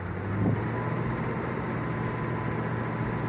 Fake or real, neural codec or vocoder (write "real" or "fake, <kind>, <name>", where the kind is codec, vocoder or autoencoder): real